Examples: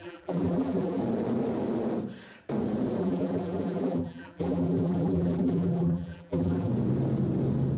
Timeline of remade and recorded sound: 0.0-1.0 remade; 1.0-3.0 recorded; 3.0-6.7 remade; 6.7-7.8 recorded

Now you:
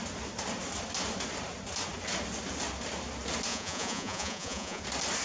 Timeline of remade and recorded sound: 0.0-3.5 recorded; 3.5-4.8 remade; 4.8-5.2 recorded

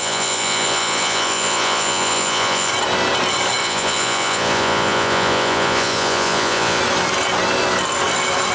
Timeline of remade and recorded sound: 0.0-2.7 remade; 2.7-3.6 recorded; 3.6-6.8 remade; 6.8-8.5 recorded

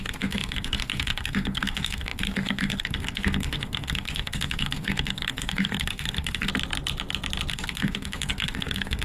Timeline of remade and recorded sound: 0.0-6.5 remade; 6.5-7.5 recorded; 7.5-9.0 remade

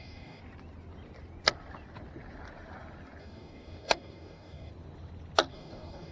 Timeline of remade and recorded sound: 0.0-0.4 remade; 0.4-3.2 recorded; 3.2-4.7 remade; 4.7-5.5 recorded; 5.5-6.1 remade